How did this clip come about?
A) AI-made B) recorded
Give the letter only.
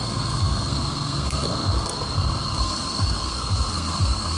A